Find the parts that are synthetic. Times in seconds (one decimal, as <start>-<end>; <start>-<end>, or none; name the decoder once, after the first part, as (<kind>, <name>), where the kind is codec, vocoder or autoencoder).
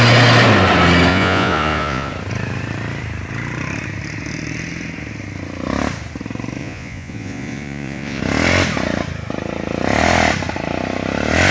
1.1-2.1 (vocoder, Vocos); 6.6-8.2